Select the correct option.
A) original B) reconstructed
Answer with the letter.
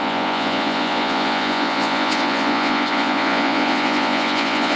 B